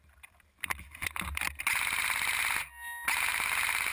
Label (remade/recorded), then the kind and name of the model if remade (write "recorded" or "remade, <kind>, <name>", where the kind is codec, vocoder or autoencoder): recorded